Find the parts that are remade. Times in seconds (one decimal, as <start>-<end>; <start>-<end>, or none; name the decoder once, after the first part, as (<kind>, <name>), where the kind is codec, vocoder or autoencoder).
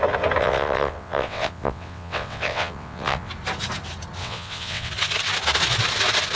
0.4-3.3 (vocoder, WaveNeXt); 4.2-4.9